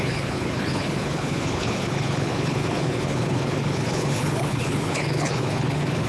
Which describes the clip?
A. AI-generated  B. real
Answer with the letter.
A